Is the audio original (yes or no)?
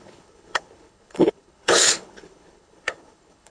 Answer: no